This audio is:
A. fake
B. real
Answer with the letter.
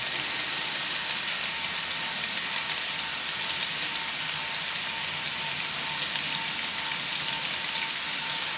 B